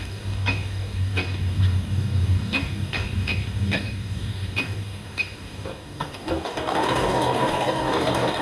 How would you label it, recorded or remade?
remade